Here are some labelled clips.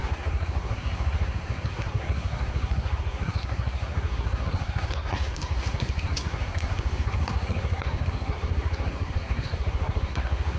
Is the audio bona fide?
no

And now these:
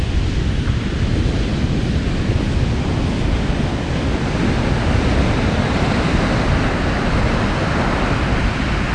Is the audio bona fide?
yes